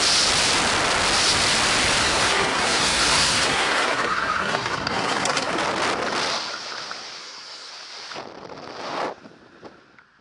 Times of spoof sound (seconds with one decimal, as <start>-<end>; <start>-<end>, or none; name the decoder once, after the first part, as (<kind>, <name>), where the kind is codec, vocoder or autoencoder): 2.0-5.6 (codec, SNAC); 7.2-7.7